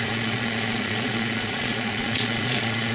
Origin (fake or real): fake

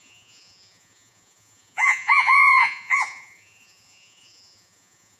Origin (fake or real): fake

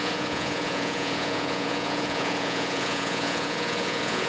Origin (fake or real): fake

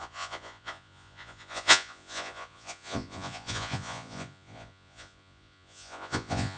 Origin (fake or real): fake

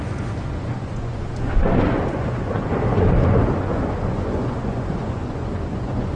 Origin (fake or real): fake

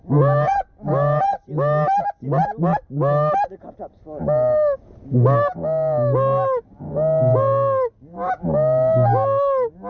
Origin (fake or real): real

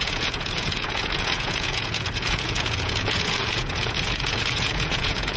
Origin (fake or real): fake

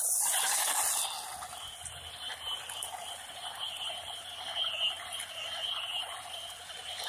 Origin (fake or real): real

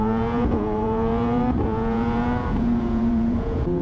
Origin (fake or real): fake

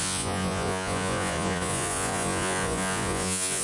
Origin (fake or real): fake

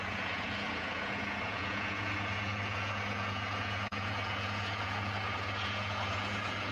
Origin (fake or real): fake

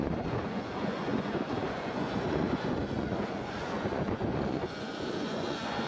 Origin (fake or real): fake